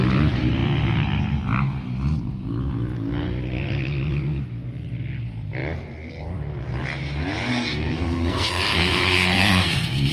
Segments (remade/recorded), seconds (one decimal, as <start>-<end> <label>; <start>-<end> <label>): 0.0-7.5 recorded; 7.5-10.1 remade